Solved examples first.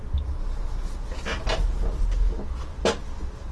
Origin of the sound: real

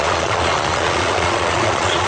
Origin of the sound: fake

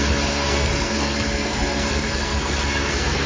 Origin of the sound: fake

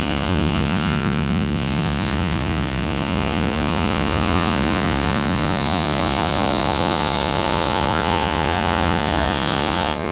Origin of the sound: fake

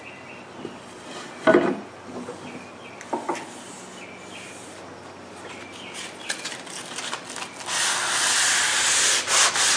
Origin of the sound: real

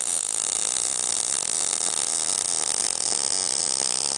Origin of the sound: real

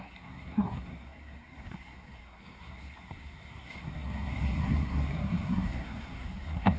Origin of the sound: fake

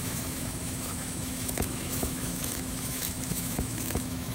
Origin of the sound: fake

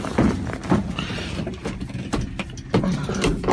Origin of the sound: real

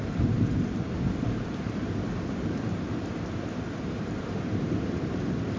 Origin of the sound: fake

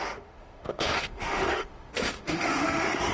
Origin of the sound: fake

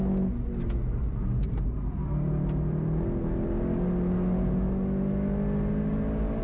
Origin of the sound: real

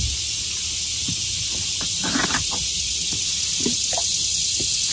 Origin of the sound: real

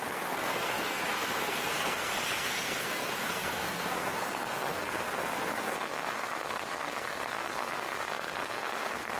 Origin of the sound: fake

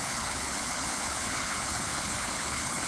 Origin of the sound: fake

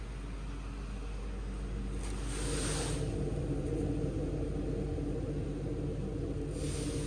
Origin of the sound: real